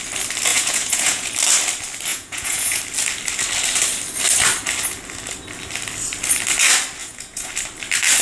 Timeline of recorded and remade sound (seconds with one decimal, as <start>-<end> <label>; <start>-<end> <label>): 0.0-0.5 recorded; 0.5-1.3 remade; 1.3-2.1 recorded; 2.1-2.8 remade; 2.8-7.0 recorded; 7.0-7.5 remade; 7.5-8.2 recorded